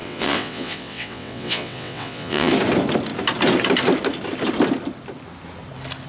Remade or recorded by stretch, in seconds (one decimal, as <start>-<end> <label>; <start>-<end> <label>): 0.0-2.5 remade; 2.5-6.1 recorded